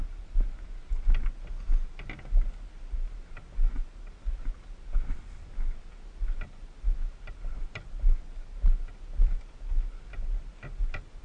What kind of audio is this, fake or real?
real